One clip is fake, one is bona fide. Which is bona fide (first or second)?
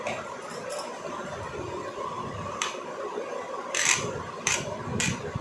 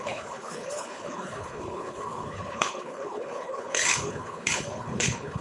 first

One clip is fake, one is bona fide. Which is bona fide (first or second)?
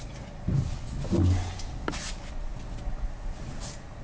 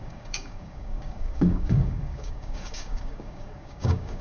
first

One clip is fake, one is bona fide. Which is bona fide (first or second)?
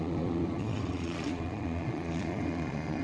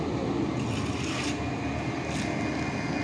second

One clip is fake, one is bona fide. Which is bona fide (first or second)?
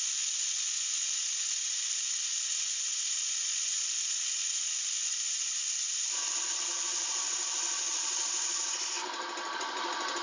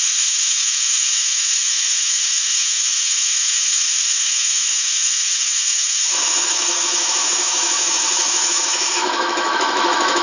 first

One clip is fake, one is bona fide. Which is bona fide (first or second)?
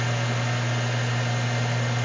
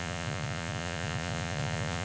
first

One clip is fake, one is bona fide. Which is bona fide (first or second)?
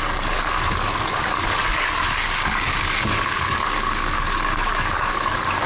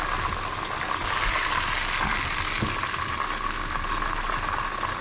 second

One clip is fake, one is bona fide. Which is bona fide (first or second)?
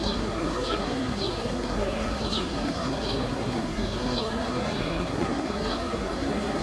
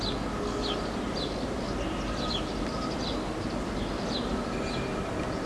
second